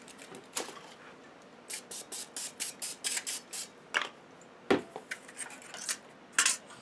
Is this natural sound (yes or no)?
yes